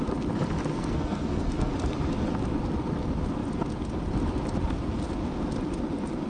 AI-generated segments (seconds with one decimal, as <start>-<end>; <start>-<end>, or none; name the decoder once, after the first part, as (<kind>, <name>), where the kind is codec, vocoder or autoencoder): 0.7-1.7 (codec, SNAC)